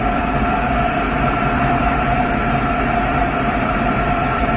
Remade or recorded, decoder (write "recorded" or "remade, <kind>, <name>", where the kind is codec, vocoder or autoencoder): remade, vocoder, BigVGAN v2